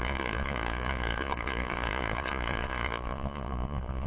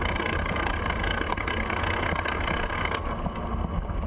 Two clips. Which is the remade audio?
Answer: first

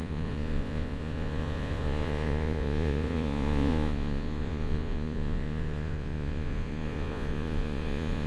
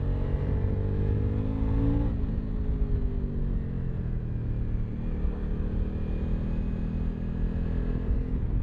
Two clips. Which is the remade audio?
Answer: first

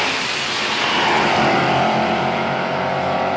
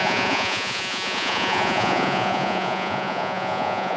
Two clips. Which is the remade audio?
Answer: second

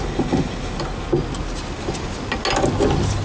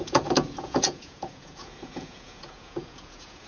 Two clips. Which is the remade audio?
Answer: second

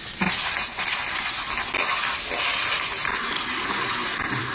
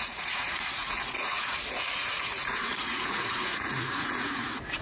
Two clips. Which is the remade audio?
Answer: second